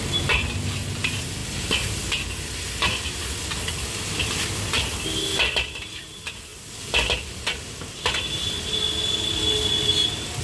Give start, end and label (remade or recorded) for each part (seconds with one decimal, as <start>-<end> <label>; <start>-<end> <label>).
0.0-10.4 recorded